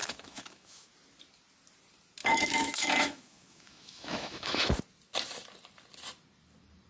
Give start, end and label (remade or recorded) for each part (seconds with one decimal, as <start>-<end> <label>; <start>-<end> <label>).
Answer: 0.0-0.9 remade; 0.9-2.2 recorded; 2.2-4.7 remade; 4.7-6.9 recorded